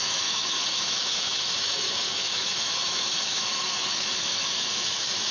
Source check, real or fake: fake